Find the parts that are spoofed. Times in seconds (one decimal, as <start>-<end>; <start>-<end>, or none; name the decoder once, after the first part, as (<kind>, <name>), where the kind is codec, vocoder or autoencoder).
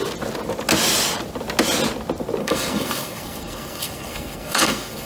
2.4-5.1 (codec, SNAC)